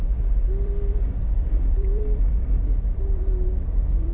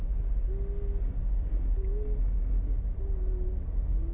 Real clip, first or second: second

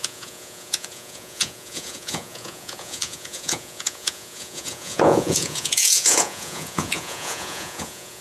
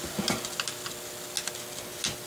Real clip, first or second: second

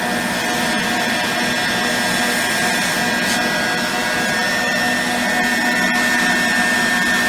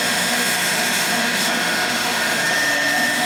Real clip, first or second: first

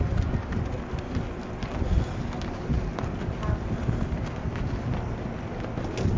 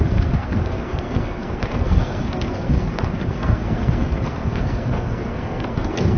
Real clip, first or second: first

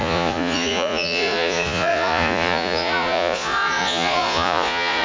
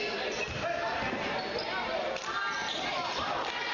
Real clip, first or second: second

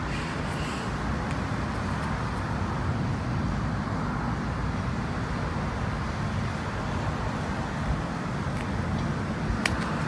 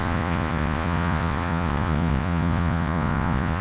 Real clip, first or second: first